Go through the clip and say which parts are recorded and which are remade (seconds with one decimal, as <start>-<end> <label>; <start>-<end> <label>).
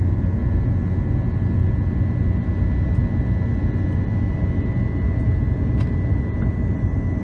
0.0-7.2 recorded